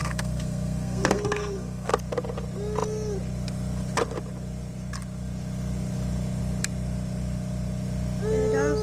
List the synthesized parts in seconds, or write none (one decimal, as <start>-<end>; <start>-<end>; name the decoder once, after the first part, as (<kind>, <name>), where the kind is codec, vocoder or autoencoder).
0.0-1.9 (codec, SNAC)